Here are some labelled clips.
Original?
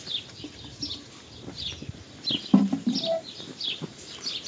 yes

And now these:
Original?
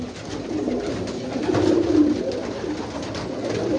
yes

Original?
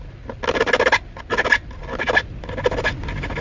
yes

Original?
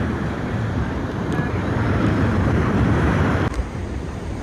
no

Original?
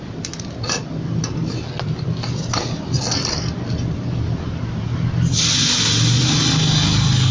yes